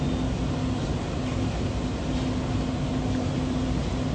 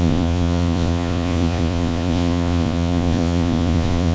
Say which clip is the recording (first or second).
first